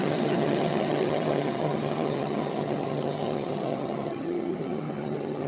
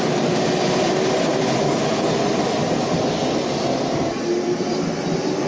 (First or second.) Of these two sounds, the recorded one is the second